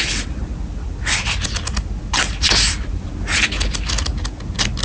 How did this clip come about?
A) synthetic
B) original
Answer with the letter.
B